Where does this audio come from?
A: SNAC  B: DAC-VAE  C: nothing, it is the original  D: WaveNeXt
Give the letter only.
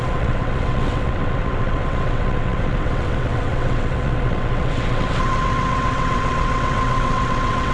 D